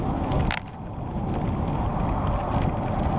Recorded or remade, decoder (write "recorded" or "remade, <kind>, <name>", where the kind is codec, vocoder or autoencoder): recorded